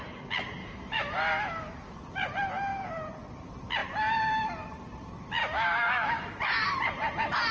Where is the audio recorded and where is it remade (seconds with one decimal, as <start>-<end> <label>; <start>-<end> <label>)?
0.0-0.6 recorded; 0.6-1.9 remade; 1.9-5.4 recorded; 5.4-6.3 remade; 6.3-7.5 recorded